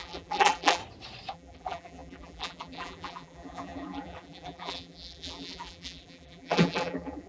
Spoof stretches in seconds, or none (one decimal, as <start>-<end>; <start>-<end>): 0.0-0.8; 1.3-7.3